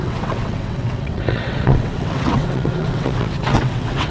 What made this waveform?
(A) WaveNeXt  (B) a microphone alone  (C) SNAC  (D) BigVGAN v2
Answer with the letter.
A